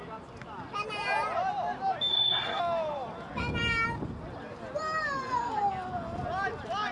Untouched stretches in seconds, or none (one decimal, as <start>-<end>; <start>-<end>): 0.0-2.1; 2.6-6.9